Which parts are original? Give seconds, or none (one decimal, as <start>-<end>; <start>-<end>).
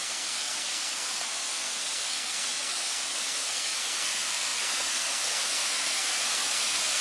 none